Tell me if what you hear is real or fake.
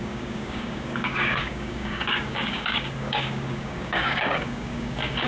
fake